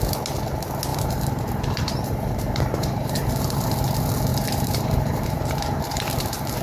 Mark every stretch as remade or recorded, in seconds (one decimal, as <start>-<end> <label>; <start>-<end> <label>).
0.0-0.9 recorded; 0.9-3.7 remade; 3.7-4.3 recorded; 4.3-5.8 remade; 5.8-6.6 recorded